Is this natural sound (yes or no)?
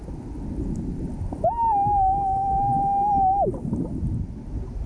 yes